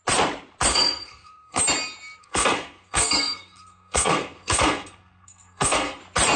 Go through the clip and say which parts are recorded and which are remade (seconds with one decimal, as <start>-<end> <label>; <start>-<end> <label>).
0.0-0.7 recorded; 0.7-1.6 remade; 1.6-2.2 recorded; 2.2-6.0 remade; 6.0-6.4 recorded